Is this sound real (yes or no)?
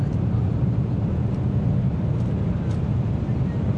yes